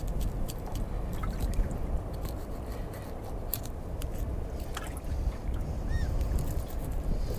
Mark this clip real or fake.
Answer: real